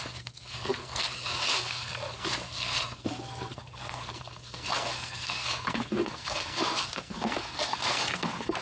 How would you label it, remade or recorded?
remade